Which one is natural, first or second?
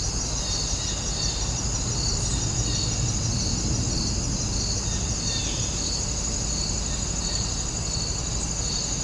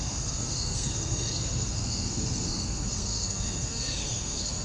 first